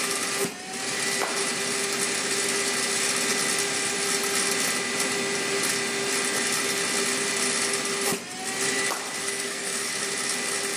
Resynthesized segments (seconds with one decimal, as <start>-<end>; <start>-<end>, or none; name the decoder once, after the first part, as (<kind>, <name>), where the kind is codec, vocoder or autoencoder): 9.2-9.9 (codec, SNAC)